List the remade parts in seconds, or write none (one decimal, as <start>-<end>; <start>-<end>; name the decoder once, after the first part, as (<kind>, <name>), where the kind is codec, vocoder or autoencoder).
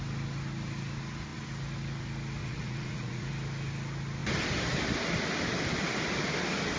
2.4-3.3 (vocoder, Vocos)